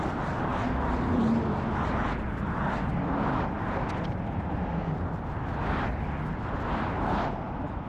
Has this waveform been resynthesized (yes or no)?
no